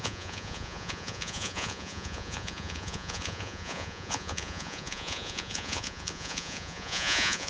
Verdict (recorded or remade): remade